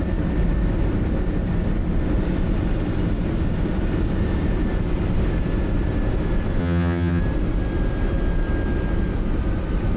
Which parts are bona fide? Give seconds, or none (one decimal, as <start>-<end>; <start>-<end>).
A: 0.0-6.6; 7.2-10.0